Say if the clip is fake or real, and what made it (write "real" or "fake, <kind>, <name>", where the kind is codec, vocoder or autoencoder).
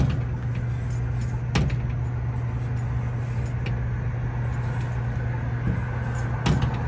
real